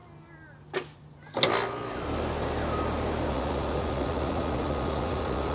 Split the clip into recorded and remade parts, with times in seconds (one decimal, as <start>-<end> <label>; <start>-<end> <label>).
0.0-3.3 recorded; 3.3-5.5 remade